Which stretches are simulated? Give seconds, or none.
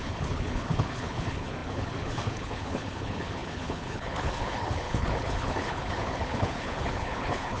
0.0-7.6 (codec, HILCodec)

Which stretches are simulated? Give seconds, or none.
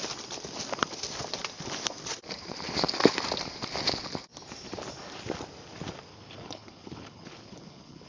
6.1-8.1 (codec, HILCodec)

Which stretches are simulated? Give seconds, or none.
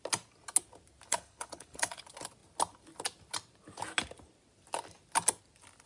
1.1-2.0 (codec, HILCodec)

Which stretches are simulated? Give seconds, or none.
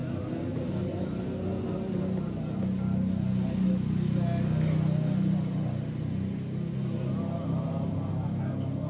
none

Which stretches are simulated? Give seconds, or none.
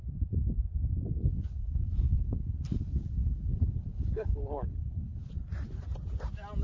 1.3-5.3 (codec, HILCodec)